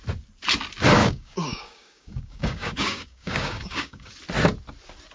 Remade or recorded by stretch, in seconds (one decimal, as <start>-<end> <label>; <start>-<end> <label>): 0.0-1.0 recorded; 1.0-4.1 remade; 4.1-5.1 recorded